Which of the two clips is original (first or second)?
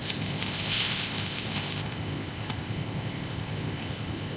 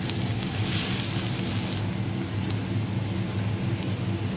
second